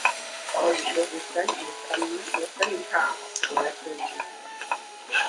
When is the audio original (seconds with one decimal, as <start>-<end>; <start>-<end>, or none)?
0.7-3.0; 3.7-4.3